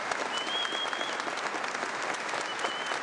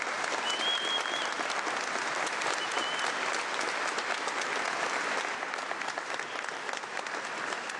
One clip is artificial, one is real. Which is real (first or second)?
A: first